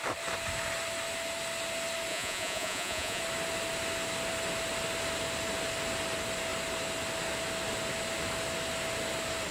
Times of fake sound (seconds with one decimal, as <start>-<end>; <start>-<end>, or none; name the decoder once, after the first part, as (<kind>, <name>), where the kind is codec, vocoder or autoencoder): 2.1-3.2 (vocoder, Vocos)